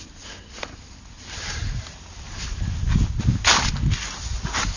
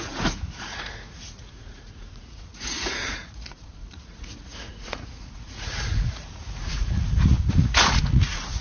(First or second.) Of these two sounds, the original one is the first